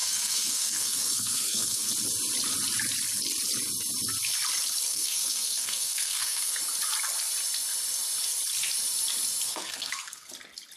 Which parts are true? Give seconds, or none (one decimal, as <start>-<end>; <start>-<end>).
1.9-4.9; 6.6-9.5; 10.3-10.8